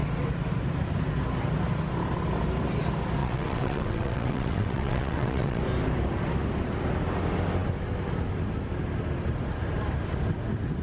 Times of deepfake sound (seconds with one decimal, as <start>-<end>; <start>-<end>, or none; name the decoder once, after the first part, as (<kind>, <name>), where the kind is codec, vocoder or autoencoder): 3.2-5.6 (vocoder, WaveNeXt)